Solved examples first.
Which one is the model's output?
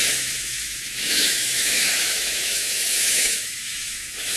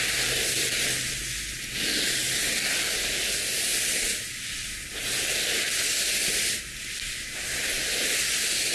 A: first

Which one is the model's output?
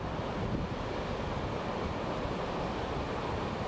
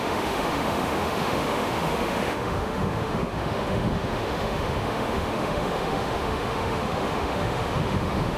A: second